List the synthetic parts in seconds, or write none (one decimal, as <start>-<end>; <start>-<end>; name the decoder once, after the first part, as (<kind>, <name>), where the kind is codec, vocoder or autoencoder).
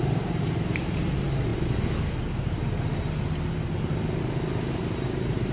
0.0-1.5 (vocoder, BigVGAN v2); 4.8-5.5